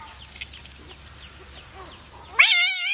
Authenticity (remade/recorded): recorded